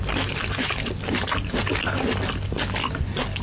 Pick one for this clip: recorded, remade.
recorded